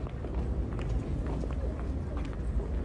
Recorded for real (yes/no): yes